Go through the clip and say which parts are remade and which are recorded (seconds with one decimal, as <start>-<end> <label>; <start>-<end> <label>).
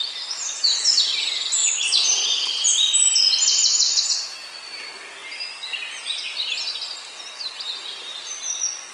0.0-8.9 recorded